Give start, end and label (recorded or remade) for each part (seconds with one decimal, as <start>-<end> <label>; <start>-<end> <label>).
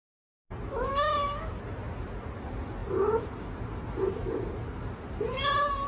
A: 0.0-0.9 recorded; 0.9-1.5 remade; 1.5-5.9 recorded